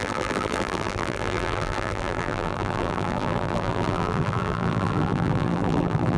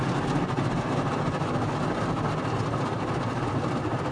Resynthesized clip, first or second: first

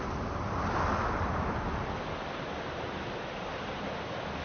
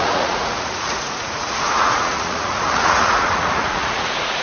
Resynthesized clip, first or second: second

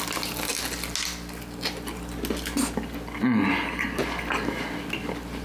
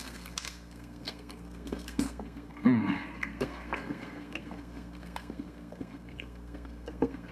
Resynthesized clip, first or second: second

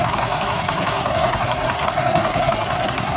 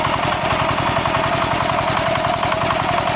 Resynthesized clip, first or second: first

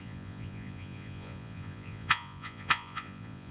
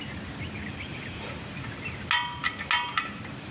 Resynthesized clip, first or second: first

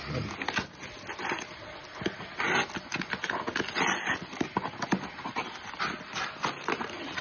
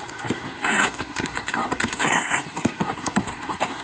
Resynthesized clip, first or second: second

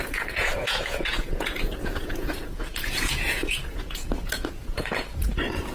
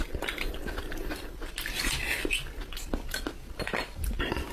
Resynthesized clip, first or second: first